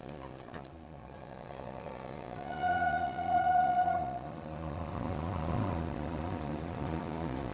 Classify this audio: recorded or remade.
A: remade